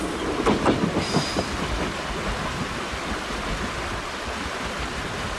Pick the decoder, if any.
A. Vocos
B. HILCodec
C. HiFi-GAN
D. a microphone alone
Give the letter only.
D